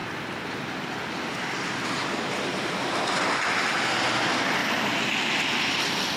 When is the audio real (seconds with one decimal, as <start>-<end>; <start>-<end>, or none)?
0.0-6.2